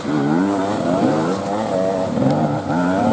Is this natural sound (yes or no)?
yes